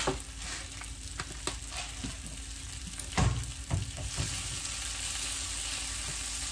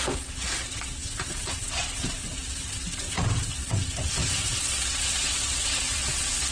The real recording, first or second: first